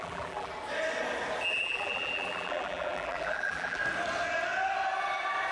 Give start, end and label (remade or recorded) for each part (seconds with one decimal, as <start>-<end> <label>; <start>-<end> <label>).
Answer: 0.0-0.5 remade; 0.5-1.5 recorded; 1.5-3.8 remade; 3.8-5.5 recorded